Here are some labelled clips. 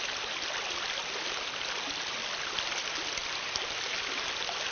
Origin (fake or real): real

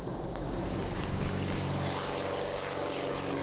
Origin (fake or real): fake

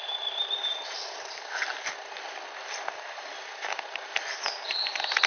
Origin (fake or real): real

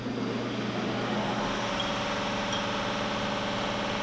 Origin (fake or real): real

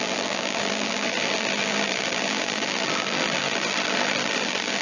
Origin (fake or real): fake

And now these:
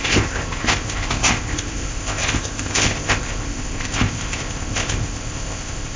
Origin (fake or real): fake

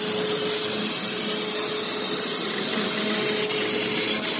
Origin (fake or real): real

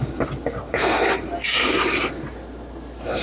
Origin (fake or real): real